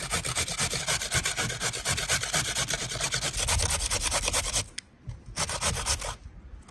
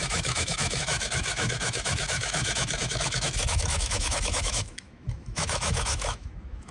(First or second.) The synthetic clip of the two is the second